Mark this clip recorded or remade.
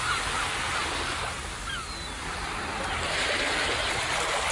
recorded